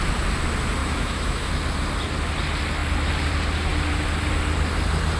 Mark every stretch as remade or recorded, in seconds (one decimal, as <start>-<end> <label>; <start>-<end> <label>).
0.0-0.8 recorded; 0.8-1.5 remade; 1.5-5.2 recorded